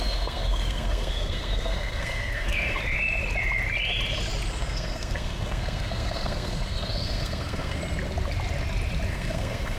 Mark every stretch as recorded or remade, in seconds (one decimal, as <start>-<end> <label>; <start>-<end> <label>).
0.0-2.8 remade; 2.8-4.5 recorded; 4.5-7.8 remade; 7.8-9.1 recorded; 9.1-9.8 remade